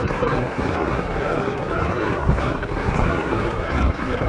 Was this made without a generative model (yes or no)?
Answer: no